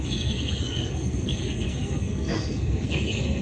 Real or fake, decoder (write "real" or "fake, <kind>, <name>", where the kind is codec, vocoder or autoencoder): fake, codec, SNAC